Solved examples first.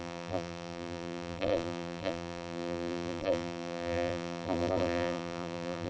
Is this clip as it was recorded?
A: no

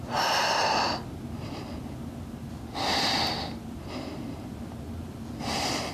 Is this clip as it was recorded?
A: yes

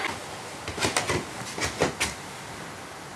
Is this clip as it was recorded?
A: yes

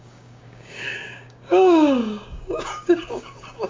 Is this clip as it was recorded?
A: no